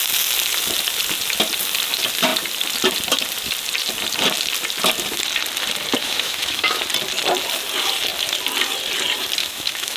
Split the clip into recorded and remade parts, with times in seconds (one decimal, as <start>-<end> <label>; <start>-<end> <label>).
0.0-6.0 recorded; 6.0-6.8 remade; 6.8-9.4 recorded; 9.4-10.0 remade